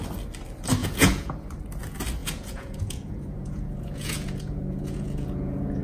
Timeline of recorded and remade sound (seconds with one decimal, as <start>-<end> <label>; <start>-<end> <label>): 0.0-0.8 recorded; 0.8-1.5 remade; 1.5-2.2 recorded; 2.2-5.8 remade